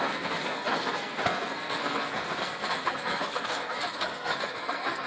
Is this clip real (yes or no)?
no